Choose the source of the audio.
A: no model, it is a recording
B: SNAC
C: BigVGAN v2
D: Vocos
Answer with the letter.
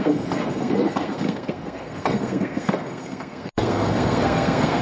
B